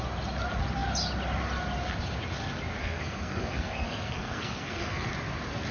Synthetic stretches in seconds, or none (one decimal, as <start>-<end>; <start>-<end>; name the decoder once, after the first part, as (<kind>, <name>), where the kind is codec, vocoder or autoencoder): 2.8-5.1 (codec, SNAC)